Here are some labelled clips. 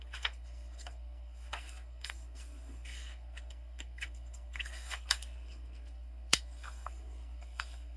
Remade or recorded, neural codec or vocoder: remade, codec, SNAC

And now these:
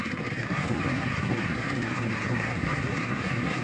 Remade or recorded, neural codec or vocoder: remade, codec, SNAC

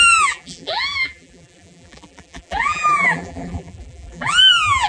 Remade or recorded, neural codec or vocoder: remade, vocoder, BigVGAN v2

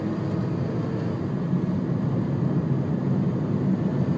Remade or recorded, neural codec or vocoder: recorded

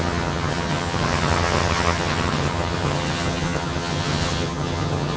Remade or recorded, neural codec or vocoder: remade, vocoder, HiFi-GAN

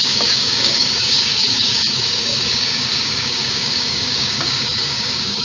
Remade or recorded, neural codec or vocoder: remade, codec, DAC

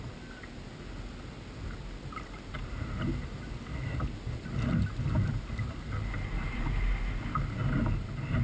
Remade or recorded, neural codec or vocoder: recorded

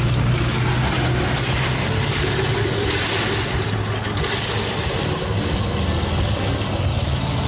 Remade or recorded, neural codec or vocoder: recorded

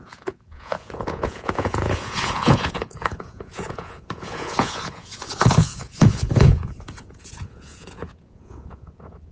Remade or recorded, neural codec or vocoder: remade, vocoder, Vocos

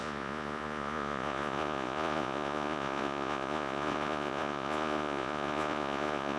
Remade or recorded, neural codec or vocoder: remade, vocoder, Vocos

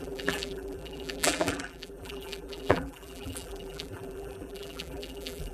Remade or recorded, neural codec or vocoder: remade, vocoder, BigVGAN v2